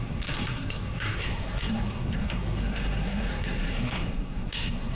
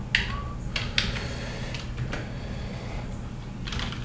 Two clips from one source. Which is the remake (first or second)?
first